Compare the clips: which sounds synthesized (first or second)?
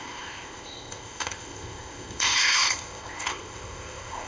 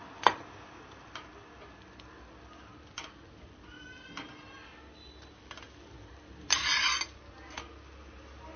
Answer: first